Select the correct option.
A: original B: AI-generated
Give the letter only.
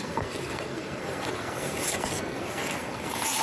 B